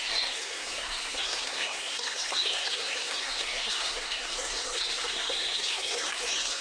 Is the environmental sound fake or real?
fake